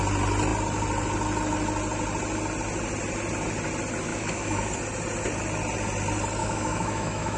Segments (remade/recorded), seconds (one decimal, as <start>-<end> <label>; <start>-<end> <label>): 0.0-4.1 recorded; 4.1-4.7 remade; 4.7-6.4 recorded; 6.4-7.4 remade